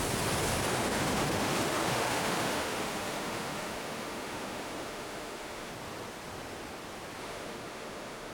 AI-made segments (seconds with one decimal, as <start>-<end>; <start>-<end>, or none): 0.7-5.7; 7.2-8.3